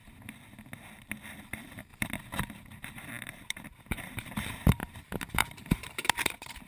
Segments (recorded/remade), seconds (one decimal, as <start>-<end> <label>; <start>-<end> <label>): 0.0-1.2 recorded; 1.2-6.7 remade